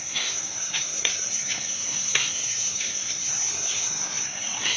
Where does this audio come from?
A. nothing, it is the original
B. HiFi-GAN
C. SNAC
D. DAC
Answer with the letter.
C